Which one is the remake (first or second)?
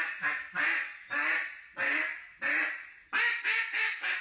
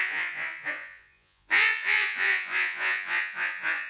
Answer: second